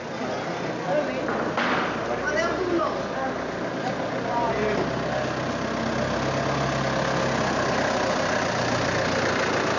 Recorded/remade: recorded